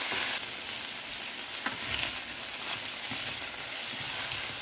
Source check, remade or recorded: recorded